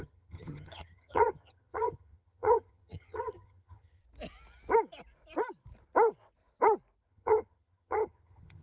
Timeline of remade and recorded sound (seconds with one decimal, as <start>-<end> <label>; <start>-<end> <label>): 0.0-4.0 remade; 4.0-7.1 recorded; 7.1-8.6 remade